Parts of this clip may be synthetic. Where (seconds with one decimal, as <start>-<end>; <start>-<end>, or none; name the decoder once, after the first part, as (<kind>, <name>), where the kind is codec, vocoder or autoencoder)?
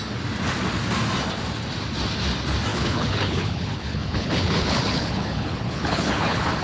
2.7-6.6 (codec, HILCodec)